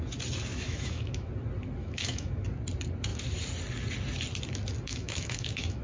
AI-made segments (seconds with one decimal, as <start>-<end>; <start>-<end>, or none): 0.5-1.3; 1.8-2.4; 4.9-5.8